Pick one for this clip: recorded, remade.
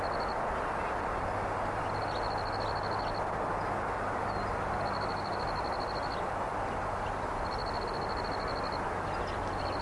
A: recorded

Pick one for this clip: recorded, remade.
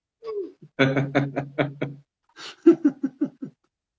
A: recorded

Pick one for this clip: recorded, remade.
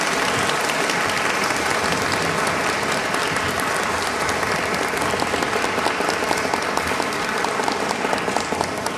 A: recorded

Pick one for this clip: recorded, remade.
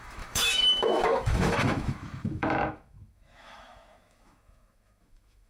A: remade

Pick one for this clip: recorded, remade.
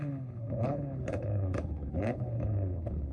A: remade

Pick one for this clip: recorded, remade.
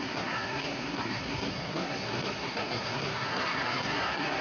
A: remade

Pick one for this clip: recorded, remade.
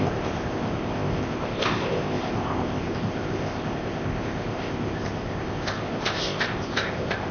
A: remade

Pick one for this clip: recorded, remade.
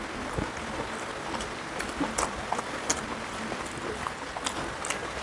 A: recorded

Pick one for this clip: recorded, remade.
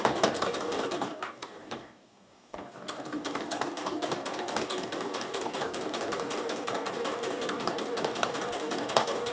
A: remade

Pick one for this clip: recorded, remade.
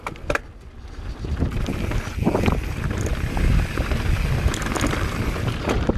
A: recorded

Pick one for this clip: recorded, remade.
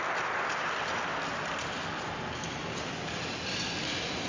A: recorded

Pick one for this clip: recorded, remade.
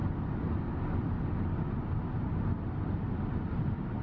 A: recorded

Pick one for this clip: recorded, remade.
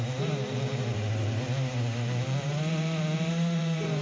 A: remade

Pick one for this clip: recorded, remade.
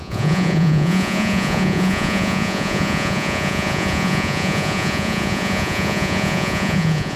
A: remade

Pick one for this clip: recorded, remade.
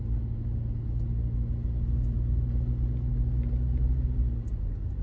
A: recorded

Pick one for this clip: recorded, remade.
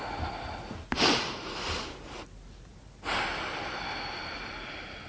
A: recorded